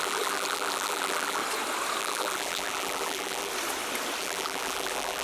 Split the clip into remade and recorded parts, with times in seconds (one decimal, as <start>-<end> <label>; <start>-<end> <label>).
0.0-1.4 remade; 1.4-2.0 recorded; 2.0-3.5 remade; 3.5-4.2 recorded; 4.2-5.2 remade